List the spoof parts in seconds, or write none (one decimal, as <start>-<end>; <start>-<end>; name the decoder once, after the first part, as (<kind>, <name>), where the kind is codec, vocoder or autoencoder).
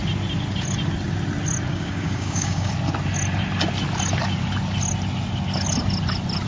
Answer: 1.7-2.7 (codec, DAC)